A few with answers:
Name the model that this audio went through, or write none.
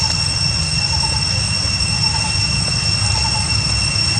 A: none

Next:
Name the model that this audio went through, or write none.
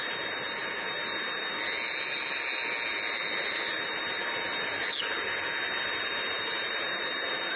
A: none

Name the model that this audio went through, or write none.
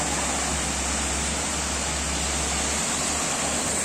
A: none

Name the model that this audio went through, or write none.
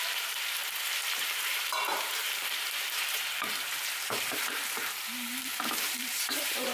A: vocoder, BigVGAN v2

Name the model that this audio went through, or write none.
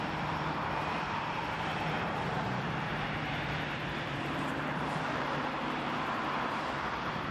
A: vocoder, BigVGAN v2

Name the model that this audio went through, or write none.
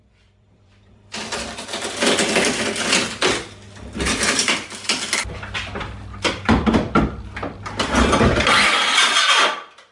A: vocoder, BigVGAN v2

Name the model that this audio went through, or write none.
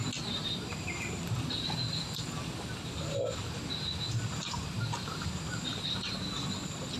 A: none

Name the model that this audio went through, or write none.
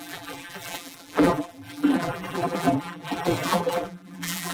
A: vocoder, BigVGAN v2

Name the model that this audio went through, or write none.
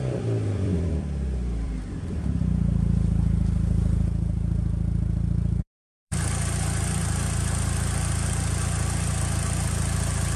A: vocoder, BigVGAN v2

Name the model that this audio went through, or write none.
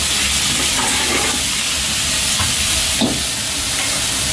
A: none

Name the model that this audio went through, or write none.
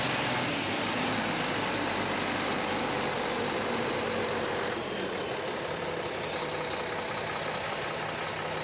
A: none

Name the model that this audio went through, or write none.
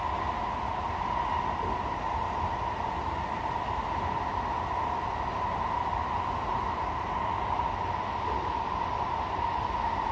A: none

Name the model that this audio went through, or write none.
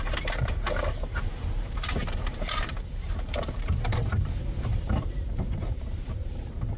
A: vocoder, BigVGAN v2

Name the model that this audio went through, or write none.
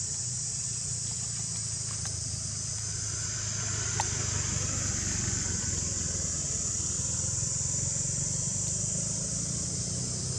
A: vocoder, BigVGAN v2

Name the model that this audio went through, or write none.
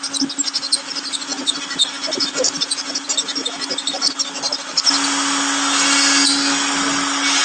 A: none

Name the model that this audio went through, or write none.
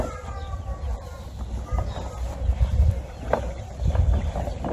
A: vocoder, BigVGAN v2